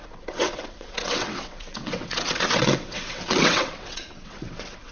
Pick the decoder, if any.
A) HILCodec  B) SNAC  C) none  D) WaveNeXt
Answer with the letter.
D